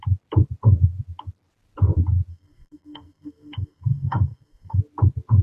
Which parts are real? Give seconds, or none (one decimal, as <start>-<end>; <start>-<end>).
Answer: 0.0-2.3; 4.8-5.4